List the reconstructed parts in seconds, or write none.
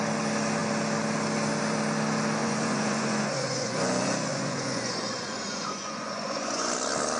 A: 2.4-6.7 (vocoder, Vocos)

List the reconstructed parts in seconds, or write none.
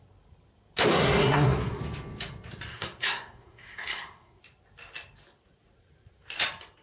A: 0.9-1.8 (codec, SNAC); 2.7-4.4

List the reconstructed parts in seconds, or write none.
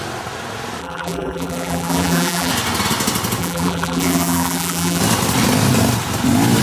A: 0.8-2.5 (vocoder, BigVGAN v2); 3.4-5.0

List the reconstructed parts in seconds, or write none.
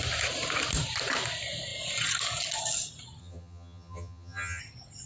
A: 3.2-4.6 (vocoder, HiFi-GAN)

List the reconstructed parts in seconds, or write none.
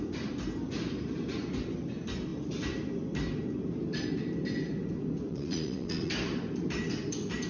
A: 5.3-6.1 (vocoder, Vocos)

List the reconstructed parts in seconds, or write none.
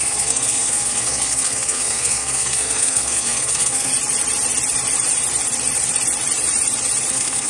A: 0.0-3.9 (codec, SNAC); 7.1-7.5